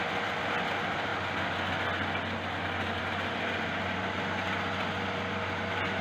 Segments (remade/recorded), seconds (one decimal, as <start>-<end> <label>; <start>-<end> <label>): 0.0-6.0 recorded